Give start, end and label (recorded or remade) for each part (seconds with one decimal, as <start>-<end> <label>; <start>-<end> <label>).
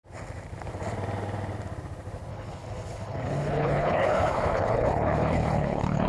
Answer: 0.0-2.3 recorded; 2.3-6.1 remade